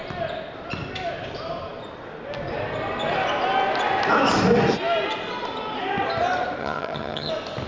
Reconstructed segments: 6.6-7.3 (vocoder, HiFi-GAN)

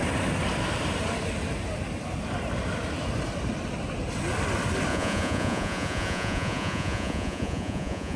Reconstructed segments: 4.9-8.2 (vocoder, Vocos)

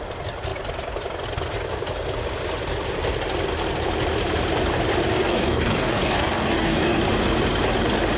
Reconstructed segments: 5.1-7.0 (codec, DAC)

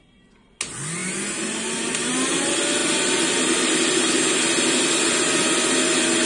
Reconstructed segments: none

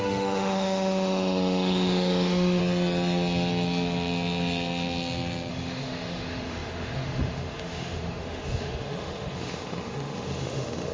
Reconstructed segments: 0.0-2.6 (autoencoder, DAC-VAE); 5.5-10.9

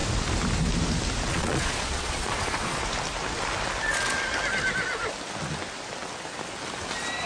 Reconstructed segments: 1.3-2.8 (vocoder, Vocos)

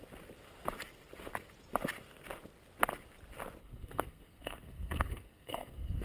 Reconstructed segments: 3.6-6.0 (codec, SNAC)